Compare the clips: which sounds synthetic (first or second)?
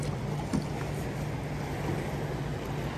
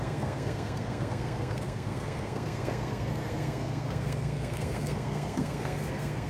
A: second